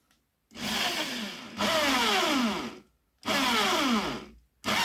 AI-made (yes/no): no